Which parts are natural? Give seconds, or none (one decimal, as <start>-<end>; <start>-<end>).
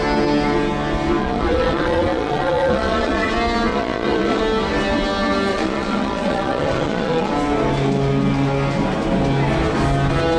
0.0-1.2; 3.3-3.7; 4.4-5.5; 7.3-10.4